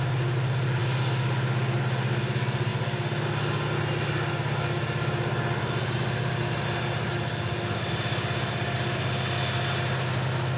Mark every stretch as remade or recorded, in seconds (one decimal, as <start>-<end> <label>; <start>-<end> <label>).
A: 0.0-10.6 recorded